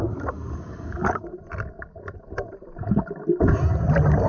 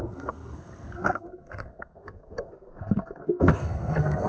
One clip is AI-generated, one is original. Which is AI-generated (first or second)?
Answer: second